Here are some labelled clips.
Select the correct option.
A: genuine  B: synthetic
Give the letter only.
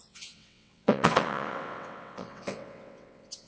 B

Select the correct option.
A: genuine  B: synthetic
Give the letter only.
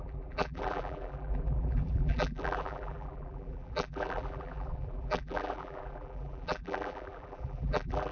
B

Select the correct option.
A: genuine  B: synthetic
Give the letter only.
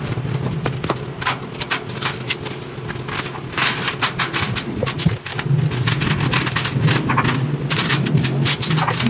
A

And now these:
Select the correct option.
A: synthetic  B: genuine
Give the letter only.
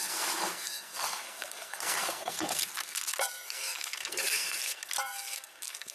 A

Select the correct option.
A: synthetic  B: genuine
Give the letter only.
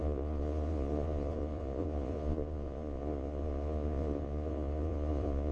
A